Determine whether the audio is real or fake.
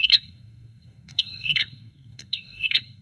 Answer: fake